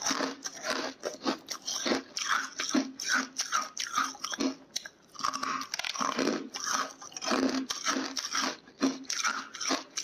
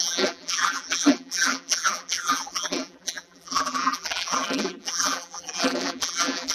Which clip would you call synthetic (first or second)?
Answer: second